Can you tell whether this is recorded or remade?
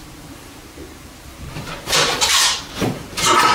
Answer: remade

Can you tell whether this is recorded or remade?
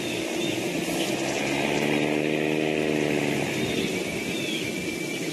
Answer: recorded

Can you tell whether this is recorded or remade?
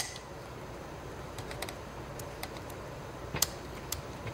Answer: remade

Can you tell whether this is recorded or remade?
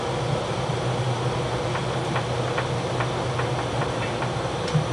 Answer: recorded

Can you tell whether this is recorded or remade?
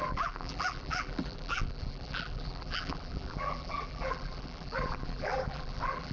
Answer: remade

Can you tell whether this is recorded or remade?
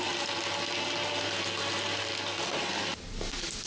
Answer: recorded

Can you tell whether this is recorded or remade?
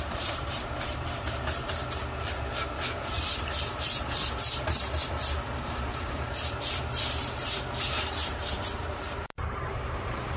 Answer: remade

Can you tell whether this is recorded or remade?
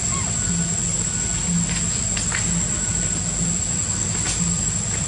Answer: recorded